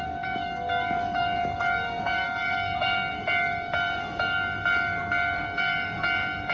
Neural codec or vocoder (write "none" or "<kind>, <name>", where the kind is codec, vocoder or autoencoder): codec, DAC